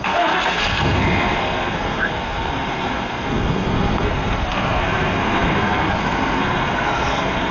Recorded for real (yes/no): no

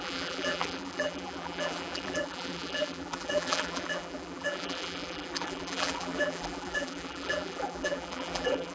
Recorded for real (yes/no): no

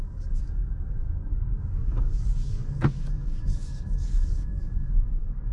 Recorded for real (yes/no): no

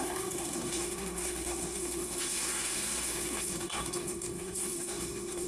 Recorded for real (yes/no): no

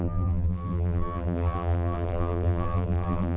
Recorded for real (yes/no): no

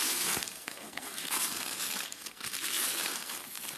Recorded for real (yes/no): no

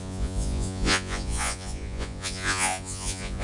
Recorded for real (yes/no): no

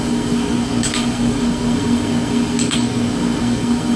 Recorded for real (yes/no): no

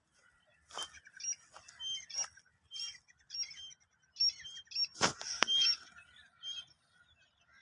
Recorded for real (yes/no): yes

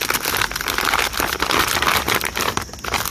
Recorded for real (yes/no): yes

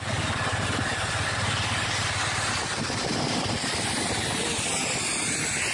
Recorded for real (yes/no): yes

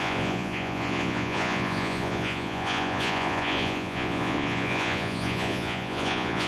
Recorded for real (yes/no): no